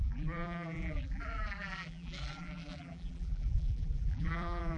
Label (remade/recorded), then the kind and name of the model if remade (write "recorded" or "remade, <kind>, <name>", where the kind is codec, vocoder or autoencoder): remade, vocoder, BigVGAN v2